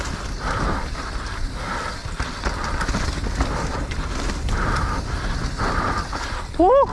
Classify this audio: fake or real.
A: real